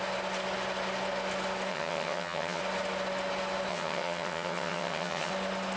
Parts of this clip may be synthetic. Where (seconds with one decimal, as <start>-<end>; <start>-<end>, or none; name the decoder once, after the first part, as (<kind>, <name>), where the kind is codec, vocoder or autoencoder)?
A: 1.7-2.6 (vocoder, HiFi-GAN); 3.7-5.3

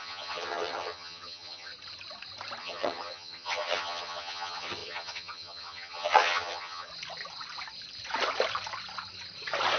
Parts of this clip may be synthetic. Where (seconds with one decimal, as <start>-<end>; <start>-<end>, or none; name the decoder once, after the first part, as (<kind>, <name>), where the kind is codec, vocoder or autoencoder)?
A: 0.0-1.7 (vocoder, HiFi-GAN); 2.6-6.9

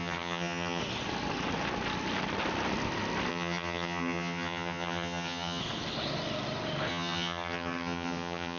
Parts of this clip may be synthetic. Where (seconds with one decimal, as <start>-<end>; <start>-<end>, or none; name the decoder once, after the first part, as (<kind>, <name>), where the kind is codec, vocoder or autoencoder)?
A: 0.0-0.8 (vocoder, HiFi-GAN); 3.3-5.6; 6.9-8.6

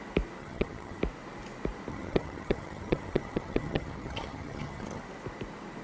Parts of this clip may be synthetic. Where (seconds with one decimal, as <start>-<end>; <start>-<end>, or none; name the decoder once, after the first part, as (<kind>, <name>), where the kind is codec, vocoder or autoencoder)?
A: 0.4-1.0 (vocoder, HiFi-GAN); 1.9-5.0

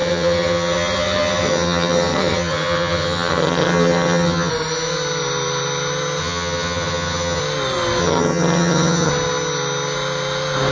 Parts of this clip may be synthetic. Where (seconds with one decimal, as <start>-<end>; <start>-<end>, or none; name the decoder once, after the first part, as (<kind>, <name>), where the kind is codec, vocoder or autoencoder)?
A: 0.0-4.5 (vocoder, HiFi-GAN); 6.2-7.4; 8.0-9.1

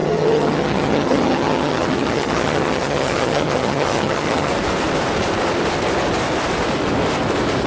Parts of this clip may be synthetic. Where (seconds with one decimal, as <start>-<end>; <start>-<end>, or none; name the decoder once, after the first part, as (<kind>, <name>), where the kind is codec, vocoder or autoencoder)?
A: 0.0-4.5 (vocoder, HiFi-GAN)

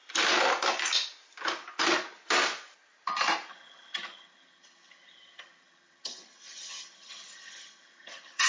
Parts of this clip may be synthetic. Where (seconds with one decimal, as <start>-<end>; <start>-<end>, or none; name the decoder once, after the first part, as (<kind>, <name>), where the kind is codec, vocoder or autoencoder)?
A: 3.5-8.5 (vocoder, HiFi-GAN)